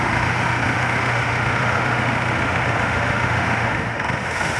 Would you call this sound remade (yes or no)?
yes